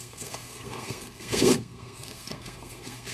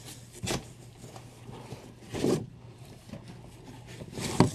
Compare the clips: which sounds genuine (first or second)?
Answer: second